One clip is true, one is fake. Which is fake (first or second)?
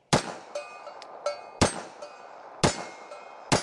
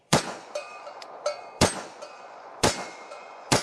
second